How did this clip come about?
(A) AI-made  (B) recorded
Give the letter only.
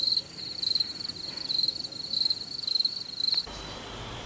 B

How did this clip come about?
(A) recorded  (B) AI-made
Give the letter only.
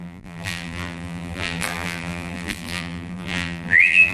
B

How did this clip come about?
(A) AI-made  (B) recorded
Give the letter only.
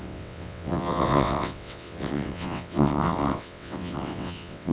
A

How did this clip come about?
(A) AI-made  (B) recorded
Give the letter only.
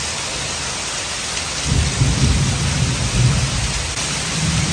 B